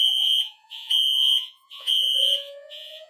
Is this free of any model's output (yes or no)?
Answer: no